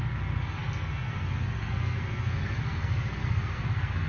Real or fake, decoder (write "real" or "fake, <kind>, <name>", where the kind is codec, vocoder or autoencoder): fake, codec, SNAC